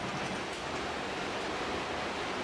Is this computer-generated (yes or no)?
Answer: no